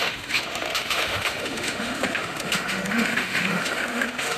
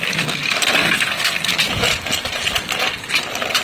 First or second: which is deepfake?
first